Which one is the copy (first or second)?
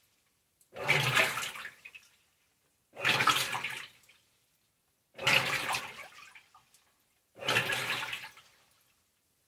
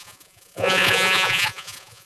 second